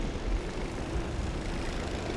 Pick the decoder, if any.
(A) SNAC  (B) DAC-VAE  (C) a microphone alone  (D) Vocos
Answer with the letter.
C